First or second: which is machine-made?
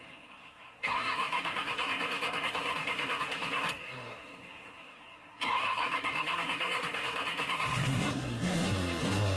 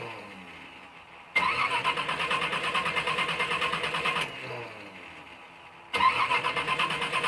first